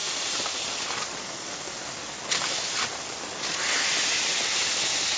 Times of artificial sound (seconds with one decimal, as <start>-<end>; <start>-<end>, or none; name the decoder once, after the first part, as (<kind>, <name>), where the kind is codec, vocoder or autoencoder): 1.2-1.7 (codec, SNAC)